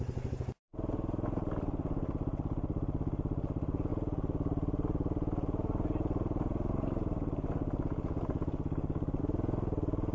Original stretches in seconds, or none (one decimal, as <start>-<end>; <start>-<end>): 0.0-10.1